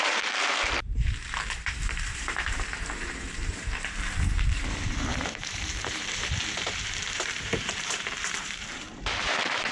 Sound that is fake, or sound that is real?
fake